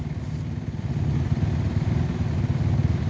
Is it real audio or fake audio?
real